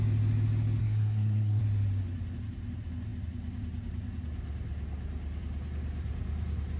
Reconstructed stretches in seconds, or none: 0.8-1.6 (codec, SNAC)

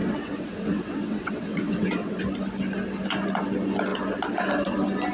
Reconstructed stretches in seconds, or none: 0.0-2.2 (vocoder, WaveNeXt)

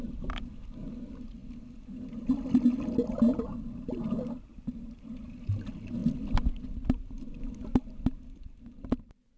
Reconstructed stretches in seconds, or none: none

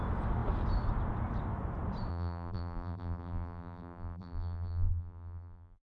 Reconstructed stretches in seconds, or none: 2.1-5.9 (vocoder, BigVGAN v2)